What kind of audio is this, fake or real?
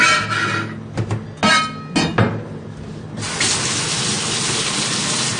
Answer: real